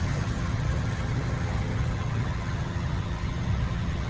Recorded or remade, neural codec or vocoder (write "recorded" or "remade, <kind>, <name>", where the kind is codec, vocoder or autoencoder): remade, vocoder, HiFi-GAN